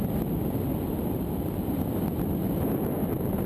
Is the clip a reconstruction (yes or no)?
no